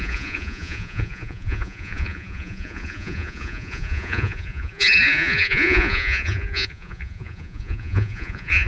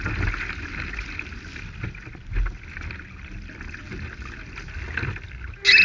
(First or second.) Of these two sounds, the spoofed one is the first